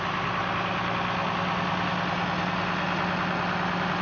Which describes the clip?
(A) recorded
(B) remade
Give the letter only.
A